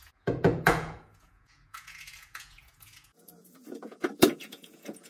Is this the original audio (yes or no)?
no